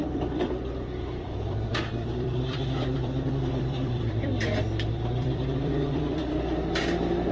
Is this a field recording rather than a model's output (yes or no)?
no